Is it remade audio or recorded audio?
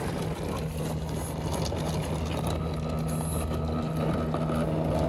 recorded